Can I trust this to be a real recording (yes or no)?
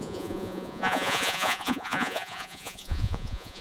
no